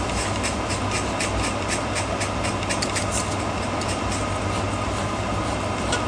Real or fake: real